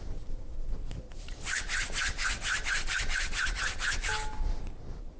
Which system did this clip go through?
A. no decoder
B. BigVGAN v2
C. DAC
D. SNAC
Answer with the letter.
A